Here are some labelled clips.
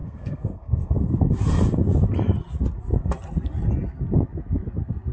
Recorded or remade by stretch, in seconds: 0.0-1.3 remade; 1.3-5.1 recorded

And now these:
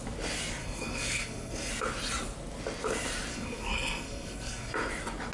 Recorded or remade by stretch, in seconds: 0.0-0.6 recorded; 0.6-1.7 remade; 1.7-3.3 recorded; 3.3-4.7 remade; 4.7-5.3 recorded

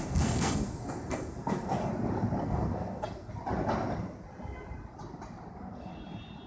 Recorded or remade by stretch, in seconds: 0.0-1.8 remade; 1.8-2.4 recorded; 2.4-3.3 remade; 3.3-5.5 recorded; 5.5-5.9 remade; 5.9-6.5 recorded

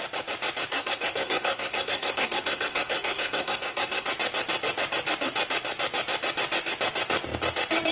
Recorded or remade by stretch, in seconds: 0.0-0.7 recorded; 0.7-4.1 remade; 4.1-7.9 recorded

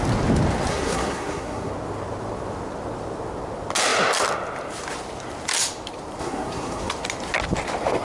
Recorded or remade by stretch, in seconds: 0.0-0.7 recorded; 0.7-1.7 remade; 1.7-6.2 recorded; 6.2-6.9 remade; 6.9-8.0 recorded

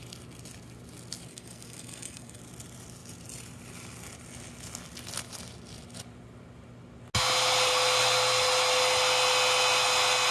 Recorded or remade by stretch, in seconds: 0.0-1.3 recorded; 1.3-2.4 remade; 2.4-10.3 recorded

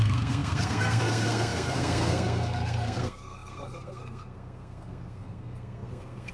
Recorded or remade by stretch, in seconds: 0.0-6.3 remade